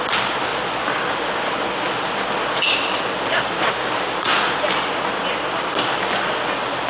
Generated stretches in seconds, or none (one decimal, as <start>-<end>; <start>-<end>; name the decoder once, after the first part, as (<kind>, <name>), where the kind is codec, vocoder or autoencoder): none